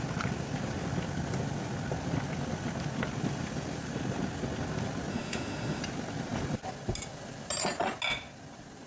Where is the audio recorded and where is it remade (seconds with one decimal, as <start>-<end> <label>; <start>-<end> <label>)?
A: 0.0-5.1 recorded; 5.1-5.8 remade; 5.8-8.9 recorded